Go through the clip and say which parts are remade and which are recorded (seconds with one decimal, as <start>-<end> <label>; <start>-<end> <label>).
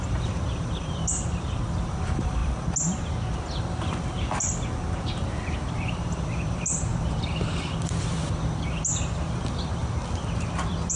0.0-2.4 remade; 2.4-3.6 recorded; 3.6-11.0 remade